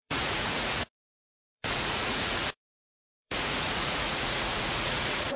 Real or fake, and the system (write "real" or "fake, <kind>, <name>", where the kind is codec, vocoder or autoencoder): fake, vocoder, Vocos